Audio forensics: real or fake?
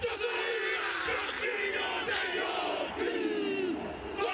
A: real